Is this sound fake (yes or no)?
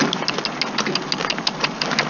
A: no